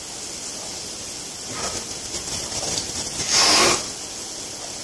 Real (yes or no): yes